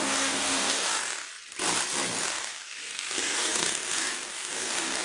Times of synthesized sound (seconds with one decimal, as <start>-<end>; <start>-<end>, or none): 0.0-1.3; 2.2-5.0